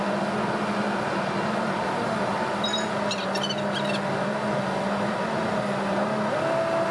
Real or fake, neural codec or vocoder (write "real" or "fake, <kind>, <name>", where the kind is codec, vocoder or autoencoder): real